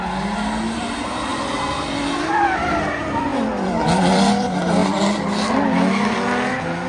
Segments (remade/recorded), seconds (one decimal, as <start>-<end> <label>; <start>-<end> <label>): 0.0-6.9 recorded